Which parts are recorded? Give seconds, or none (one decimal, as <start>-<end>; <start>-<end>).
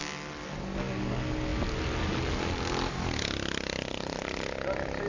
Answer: 0.0-5.1